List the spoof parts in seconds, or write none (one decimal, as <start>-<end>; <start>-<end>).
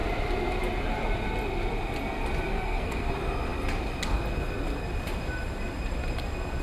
2.5-3.1